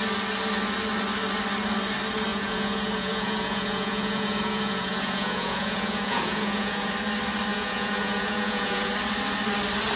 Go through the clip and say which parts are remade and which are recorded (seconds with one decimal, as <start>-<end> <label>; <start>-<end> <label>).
0.0-2.3 recorded; 2.3-6.9 remade; 6.9-7.5 recorded; 7.5-8.9 remade; 8.9-10.0 recorded